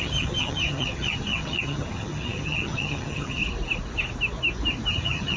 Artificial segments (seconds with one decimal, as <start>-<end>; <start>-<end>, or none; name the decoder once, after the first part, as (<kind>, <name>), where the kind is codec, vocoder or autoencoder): 0.0-3.4 (vocoder, HiFi-GAN); 4.9-5.4